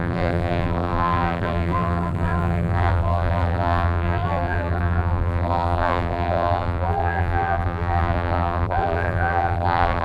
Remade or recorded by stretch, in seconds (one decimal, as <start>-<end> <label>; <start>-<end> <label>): 0.0-10.0 remade